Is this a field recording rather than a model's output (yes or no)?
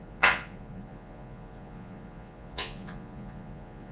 no